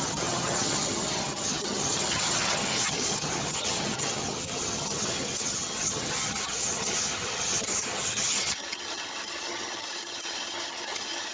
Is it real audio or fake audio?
fake